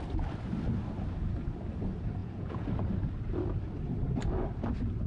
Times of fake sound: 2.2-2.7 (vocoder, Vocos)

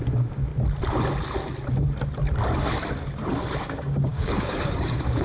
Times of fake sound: 0.0-0.5 (codec, DAC); 3.6-5.2

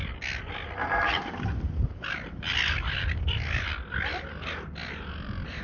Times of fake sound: 1.9-5.6 (vocoder, BigVGAN v2)

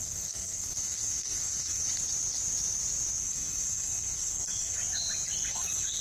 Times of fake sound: 0.0-1.8 (codec, SNAC); 3.2-4.8; 5.5-6.0